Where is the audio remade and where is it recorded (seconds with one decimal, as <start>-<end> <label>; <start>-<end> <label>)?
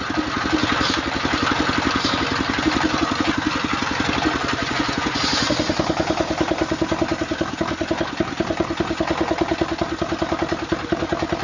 0.0-4.6 recorded; 4.6-5.2 remade; 5.2-11.4 recorded